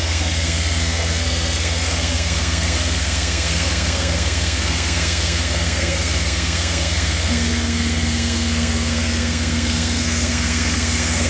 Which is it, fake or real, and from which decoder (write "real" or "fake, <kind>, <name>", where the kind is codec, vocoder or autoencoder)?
fake, codec, SNAC